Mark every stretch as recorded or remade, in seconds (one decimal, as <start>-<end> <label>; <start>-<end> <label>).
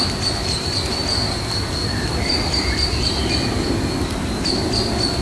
0.0-1.8 recorded; 1.8-3.7 remade; 3.7-5.2 recorded